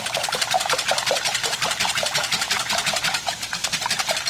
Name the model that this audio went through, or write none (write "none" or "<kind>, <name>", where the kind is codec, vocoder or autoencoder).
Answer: vocoder, BigVGAN v2